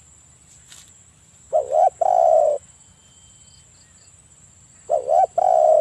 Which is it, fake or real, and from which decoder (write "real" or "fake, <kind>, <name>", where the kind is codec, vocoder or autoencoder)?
real